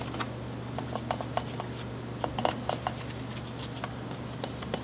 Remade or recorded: recorded